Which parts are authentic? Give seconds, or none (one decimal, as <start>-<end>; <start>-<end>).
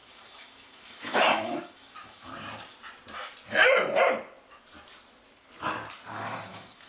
2.3-6.2